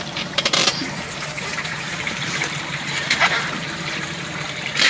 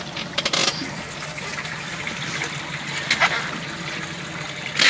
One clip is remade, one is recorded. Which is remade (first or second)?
first